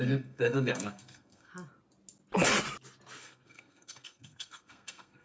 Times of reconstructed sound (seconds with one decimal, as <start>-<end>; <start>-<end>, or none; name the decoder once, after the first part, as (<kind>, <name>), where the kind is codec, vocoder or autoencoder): 0.0-1.5 (codec, SNAC); 3.2-5.2